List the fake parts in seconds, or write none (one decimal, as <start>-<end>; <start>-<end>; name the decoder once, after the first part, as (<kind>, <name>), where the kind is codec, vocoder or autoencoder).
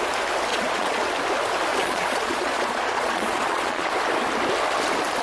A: 0.5-1.1 (vocoder, Vocos); 1.7-3.9